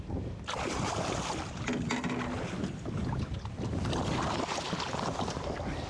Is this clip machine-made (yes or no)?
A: no